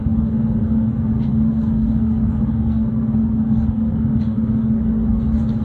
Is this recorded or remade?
remade